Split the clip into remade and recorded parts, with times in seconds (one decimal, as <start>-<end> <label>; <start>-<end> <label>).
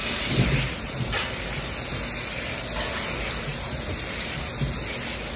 0.0-1.1 remade; 1.1-3.5 recorded; 3.5-4.4 remade; 4.4-5.4 recorded